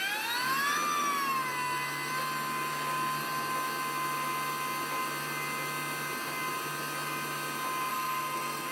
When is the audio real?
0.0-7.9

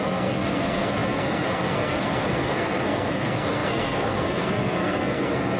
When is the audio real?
none

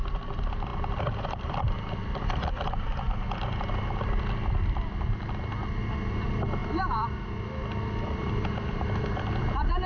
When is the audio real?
0.0-9.9

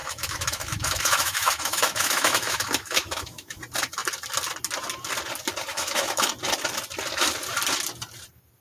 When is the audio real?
3.6-5.7; 6.3-8.6

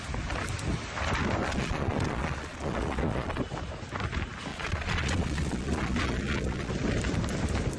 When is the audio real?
0.0-1.4; 3.4-4.5; 6.7-7.8